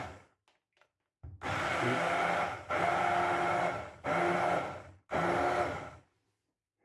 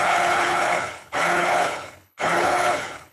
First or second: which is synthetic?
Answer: second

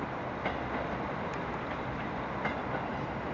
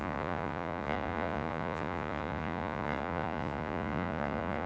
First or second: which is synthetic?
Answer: second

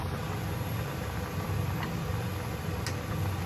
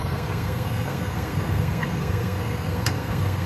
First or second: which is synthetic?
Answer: second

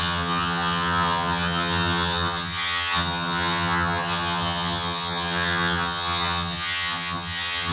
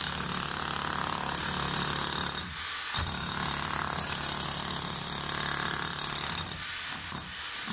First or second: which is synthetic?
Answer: first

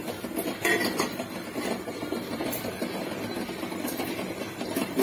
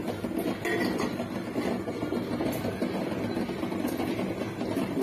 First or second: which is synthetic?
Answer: first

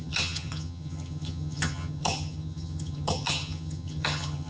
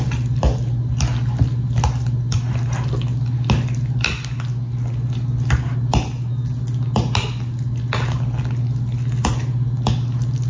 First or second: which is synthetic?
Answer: first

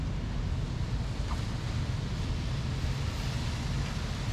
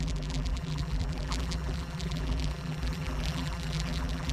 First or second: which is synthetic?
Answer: second